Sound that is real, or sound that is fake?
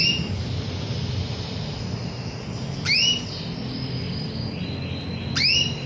real